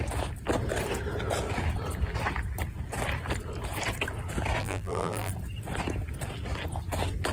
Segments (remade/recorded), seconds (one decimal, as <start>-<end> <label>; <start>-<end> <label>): 0.0-4.6 recorded; 4.6-5.3 remade; 5.3-7.3 recorded